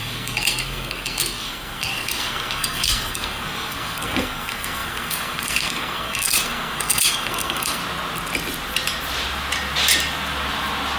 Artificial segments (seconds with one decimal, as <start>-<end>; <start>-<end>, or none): 0.0-7.8